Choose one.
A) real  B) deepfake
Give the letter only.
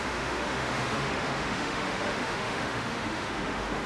B